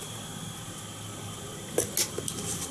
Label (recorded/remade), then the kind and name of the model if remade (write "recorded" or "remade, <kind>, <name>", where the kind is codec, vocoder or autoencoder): recorded